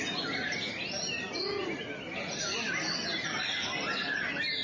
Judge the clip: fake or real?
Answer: real